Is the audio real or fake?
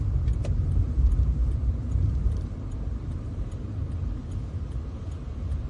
fake